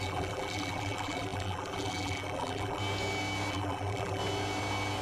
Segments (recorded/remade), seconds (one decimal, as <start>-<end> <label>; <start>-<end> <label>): 0.0-2.8 remade; 2.8-3.5 recorded; 3.5-4.2 remade; 4.2-5.0 recorded